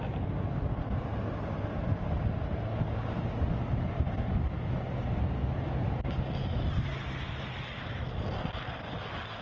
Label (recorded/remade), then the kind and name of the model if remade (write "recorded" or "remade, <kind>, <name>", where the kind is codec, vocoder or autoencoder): recorded